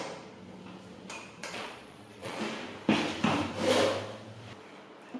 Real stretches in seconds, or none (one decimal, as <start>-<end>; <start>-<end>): 0.0-1.4; 2.4-5.2

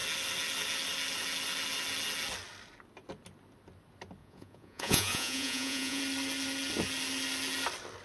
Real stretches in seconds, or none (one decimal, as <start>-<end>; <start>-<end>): 0.0-4.2; 6.0-8.0

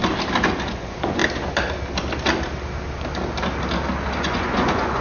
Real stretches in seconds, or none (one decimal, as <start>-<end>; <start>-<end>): 0.0-0.7; 1.2-4.2

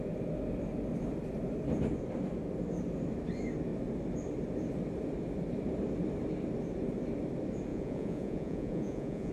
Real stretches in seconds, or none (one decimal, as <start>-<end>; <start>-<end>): 0.0-7.7